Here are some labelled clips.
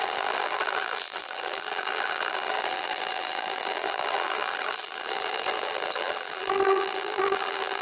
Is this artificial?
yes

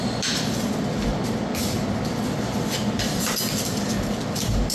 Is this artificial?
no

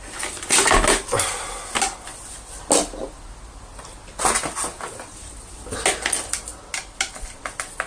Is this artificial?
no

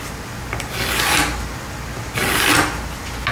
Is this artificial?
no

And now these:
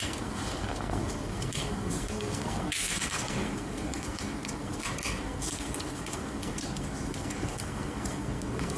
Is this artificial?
yes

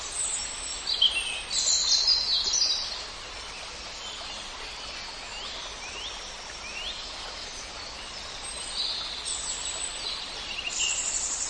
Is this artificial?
no